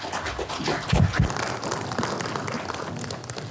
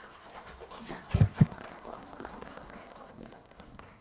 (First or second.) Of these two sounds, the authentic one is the first